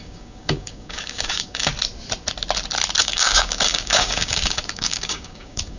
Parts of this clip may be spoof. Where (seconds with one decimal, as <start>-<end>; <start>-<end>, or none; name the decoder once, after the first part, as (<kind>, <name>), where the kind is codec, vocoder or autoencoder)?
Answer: 0.0-1.7 (codec, DAC); 3.0-5.8